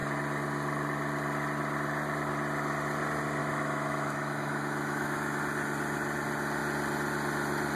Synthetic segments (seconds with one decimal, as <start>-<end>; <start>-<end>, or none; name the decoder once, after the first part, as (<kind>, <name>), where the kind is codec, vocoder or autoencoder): 3.4-5.4 (autoencoder, DAC-VAE)